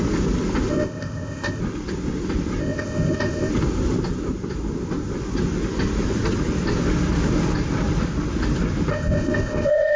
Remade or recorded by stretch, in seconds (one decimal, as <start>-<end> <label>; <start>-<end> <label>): 0.0-0.7 recorded; 0.7-1.6 remade; 1.6-2.6 recorded; 2.6-3.5 remade; 3.5-8.9 recorded; 8.9-10.0 remade